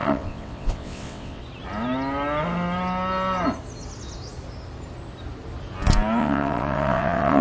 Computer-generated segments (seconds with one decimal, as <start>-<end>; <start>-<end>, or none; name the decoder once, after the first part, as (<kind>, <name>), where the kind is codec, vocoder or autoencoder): 0.0-1.4 (vocoder, WaveNeXt); 6.2-7.4